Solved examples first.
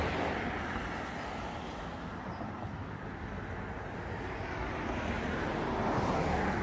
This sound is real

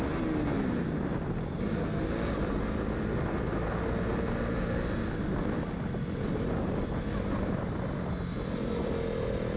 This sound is real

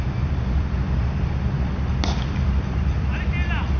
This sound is real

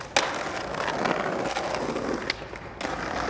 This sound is real